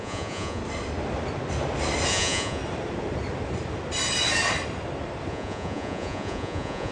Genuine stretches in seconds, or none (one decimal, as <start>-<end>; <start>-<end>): 0.6-2.1; 2.6-5.3

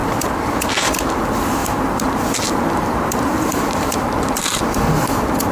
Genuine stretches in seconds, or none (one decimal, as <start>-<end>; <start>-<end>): 0.0-1.6; 4.9-5.5

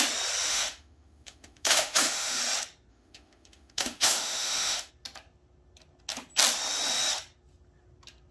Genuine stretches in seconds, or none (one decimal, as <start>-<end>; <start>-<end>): 0.0-0.5; 2.4-2.9; 4.9-8.3

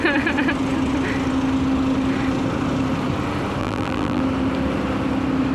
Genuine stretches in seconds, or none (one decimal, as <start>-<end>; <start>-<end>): 0.0-3.6; 4.2-5.5

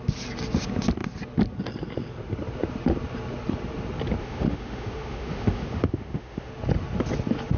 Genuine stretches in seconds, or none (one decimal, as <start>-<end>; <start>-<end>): 0.0-4.2; 6.5-7.6